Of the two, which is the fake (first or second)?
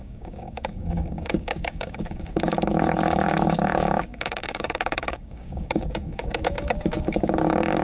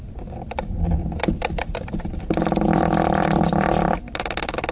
first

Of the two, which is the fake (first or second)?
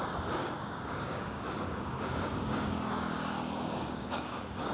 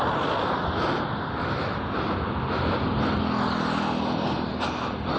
first